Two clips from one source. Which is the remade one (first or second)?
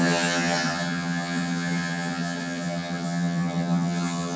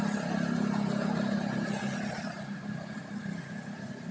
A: first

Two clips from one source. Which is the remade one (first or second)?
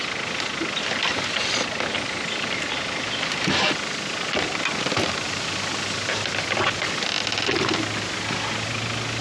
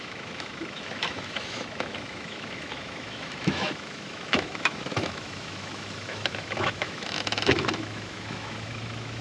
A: second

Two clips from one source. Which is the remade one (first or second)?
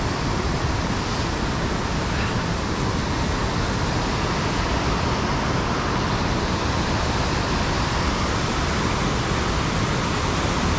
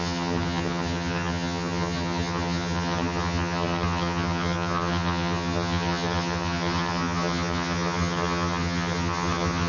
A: second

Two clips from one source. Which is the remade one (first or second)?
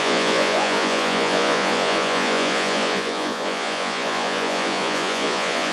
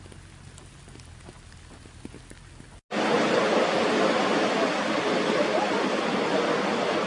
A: first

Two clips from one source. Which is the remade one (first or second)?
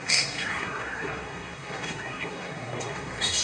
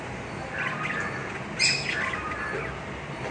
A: first